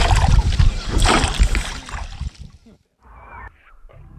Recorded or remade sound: recorded